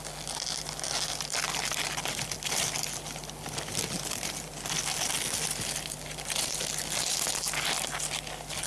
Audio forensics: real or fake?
real